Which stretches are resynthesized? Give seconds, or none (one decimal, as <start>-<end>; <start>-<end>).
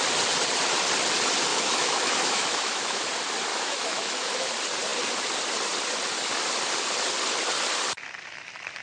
1.5-3.0; 3.5-4.5